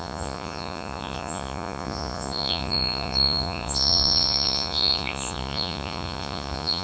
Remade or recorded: remade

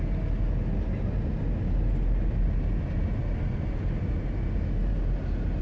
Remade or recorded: recorded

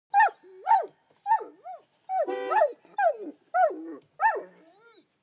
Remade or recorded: recorded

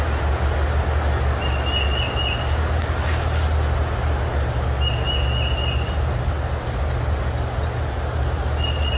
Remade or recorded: recorded